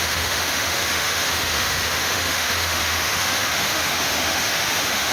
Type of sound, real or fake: fake